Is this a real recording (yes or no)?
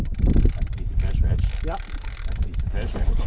yes